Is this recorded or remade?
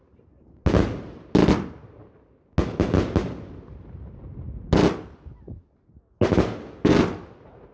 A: recorded